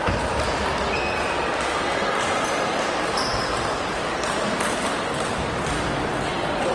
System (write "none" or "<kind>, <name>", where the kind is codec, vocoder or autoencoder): none